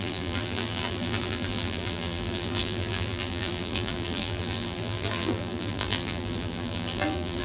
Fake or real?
fake